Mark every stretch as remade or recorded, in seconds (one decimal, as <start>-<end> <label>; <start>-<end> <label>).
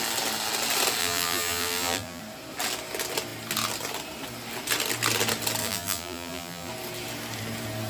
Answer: 0.0-1.0 recorded; 1.0-2.2 remade; 2.2-5.6 recorded; 5.6-6.7 remade; 6.7-7.9 recorded